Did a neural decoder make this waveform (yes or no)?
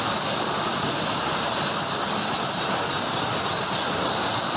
no